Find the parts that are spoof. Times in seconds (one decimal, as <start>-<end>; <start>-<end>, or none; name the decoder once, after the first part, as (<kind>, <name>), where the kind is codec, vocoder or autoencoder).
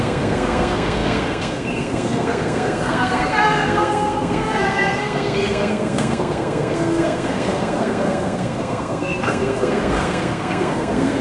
0.0-11.2 (codec, SNAC)